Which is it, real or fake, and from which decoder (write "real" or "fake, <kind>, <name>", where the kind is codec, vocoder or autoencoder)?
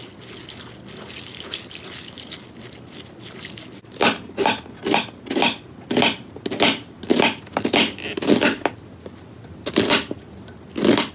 real